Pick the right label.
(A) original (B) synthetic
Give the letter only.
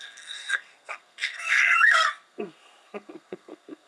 B